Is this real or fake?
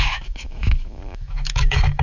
fake